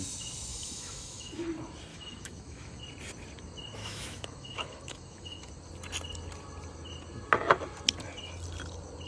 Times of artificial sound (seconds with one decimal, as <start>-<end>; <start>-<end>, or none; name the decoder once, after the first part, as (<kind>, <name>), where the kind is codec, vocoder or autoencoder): 0.5-1.4 (autoencoder, DAC-VAE); 1.9-2.8; 3.8-5.5